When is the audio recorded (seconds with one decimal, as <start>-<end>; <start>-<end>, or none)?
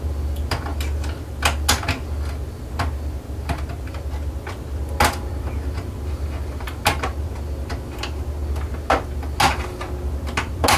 0.0-10.8